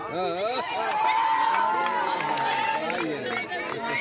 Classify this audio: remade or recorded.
recorded